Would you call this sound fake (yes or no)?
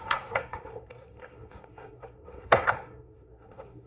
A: yes